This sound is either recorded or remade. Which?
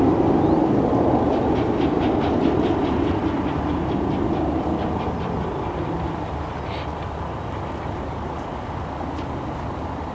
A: recorded